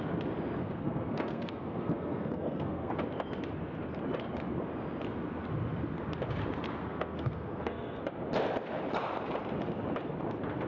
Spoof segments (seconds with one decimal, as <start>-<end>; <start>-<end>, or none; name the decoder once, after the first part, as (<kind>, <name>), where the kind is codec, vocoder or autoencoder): 0.6-2.9 (codec, SNAC); 6.8-8.0